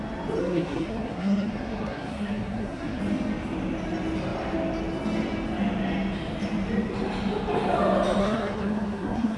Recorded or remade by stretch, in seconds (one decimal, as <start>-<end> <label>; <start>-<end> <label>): 0.0-0.4 recorded; 0.4-3.0 remade; 3.0-8.2 recorded; 8.2-9.4 remade